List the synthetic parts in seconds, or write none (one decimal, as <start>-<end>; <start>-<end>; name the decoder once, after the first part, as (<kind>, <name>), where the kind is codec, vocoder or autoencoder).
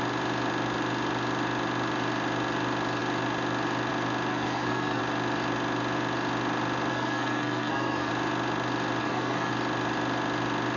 4.3-5.0 (codec, SNAC); 6.9-8.1; 9.0-9.5